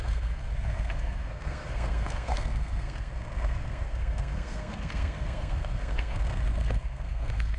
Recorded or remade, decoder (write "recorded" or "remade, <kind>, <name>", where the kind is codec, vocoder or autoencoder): remade, codec, SNAC